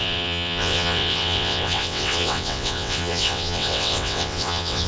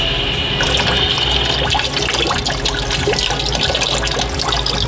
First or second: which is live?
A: second